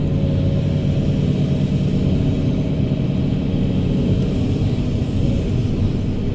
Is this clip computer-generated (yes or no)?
no